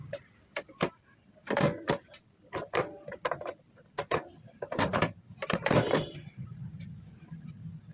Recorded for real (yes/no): no